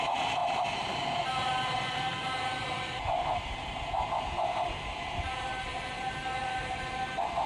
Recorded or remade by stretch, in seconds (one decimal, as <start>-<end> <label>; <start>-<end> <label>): 0.0-7.5 recorded